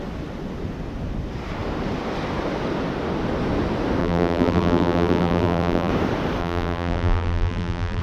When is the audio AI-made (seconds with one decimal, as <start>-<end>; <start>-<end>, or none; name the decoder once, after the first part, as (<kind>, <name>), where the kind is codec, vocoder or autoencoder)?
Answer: 4.0-5.9 (vocoder, BigVGAN v2); 6.4-8.0